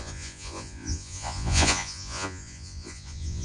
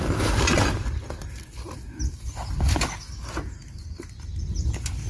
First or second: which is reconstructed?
first